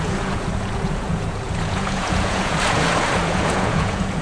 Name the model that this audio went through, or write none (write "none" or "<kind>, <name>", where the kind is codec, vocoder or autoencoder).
vocoder, Vocos